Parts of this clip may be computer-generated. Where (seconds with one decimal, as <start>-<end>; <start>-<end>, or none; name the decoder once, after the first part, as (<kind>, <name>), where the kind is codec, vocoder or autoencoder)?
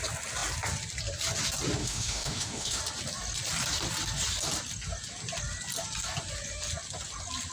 1.8-2.8 (autoencoder, DAC-VAE)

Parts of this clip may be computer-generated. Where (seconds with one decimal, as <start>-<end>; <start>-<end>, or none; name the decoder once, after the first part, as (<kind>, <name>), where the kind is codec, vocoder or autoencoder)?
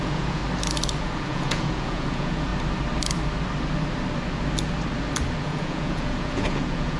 0.0-0.4 (vocoder, Vocos); 1.0-2.5; 5.4-7.0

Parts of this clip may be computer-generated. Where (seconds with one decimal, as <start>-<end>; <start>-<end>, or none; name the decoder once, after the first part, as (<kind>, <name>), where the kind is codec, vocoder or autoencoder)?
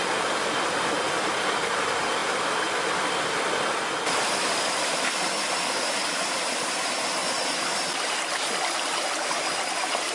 0.0-0.9 (vocoder, BigVGAN v2); 2.2-6.0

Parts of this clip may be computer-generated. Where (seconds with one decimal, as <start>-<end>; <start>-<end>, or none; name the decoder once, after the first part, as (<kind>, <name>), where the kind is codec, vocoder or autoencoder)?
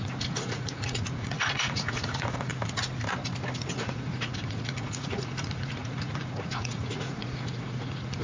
0.0-2.5 (vocoder, Vocos); 3.7-8.2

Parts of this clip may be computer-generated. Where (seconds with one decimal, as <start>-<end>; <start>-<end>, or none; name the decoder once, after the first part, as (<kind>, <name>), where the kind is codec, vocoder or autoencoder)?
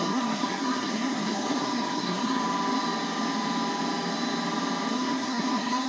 0.0-2.4 (codec, SNAC); 4.9-5.9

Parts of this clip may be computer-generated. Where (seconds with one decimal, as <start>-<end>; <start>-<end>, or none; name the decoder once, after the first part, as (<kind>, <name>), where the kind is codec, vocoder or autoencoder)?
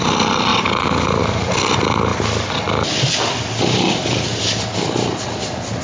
none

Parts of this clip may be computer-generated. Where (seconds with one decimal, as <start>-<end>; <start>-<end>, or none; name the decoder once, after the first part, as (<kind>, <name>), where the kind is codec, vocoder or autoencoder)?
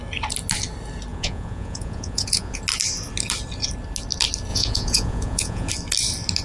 1.1-2.6 (vocoder, Vocos); 4.5-5.7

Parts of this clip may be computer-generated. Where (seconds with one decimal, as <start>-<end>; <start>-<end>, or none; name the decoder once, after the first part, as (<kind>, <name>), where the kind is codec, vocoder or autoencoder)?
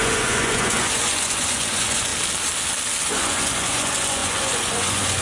0.0-2.1 (vocoder, Vocos); 3.0-5.2